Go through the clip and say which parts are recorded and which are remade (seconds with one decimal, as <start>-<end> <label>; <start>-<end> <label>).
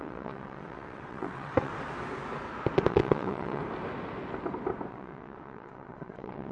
0.0-1.7 remade; 1.7-2.9 recorded; 2.9-3.6 remade; 3.6-4.9 recorded; 4.9-6.5 remade